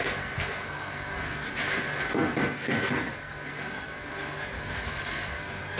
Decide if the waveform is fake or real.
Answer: fake